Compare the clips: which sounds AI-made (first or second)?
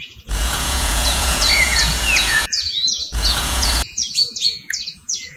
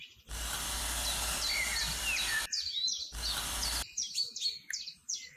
first